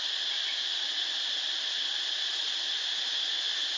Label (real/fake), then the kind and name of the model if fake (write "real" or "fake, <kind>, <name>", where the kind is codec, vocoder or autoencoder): real